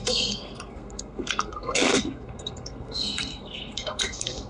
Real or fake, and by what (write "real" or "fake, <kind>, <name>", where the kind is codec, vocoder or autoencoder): fake, codec, SNAC